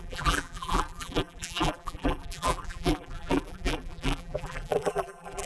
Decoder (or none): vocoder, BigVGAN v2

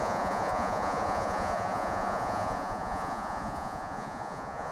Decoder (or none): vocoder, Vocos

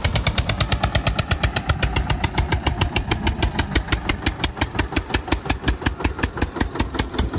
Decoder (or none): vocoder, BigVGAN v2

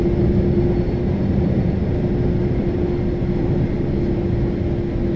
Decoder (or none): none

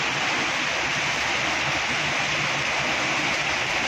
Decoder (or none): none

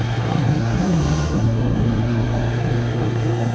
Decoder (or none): codec, SNAC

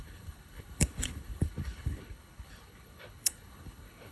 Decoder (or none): codec, HILCodec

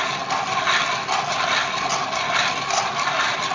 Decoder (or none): none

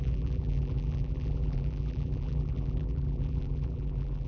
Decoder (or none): vocoder, BigVGAN v2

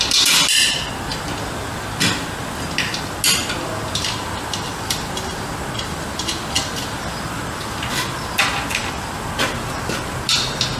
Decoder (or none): none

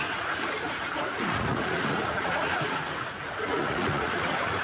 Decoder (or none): vocoder, Vocos